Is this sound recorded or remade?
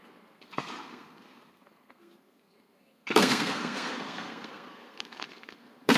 remade